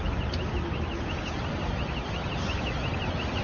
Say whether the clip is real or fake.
real